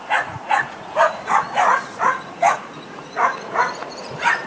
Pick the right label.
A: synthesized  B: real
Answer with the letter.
A